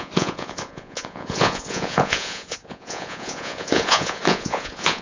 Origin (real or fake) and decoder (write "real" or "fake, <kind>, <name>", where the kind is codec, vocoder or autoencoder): fake, vocoder, Vocos